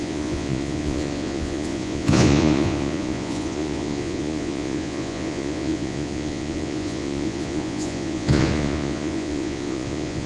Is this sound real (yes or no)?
no